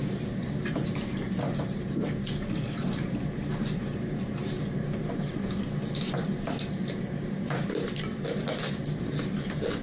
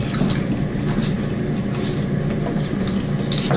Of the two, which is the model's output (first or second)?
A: first